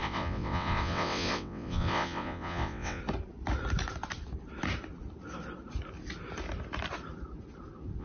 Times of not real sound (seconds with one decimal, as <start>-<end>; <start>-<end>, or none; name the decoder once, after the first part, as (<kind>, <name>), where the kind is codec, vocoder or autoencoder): 0.0-3.0 (vocoder, WaveNeXt)